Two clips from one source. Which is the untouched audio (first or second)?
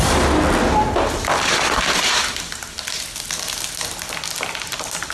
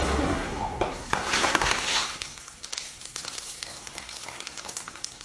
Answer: first